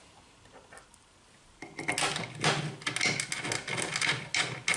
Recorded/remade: recorded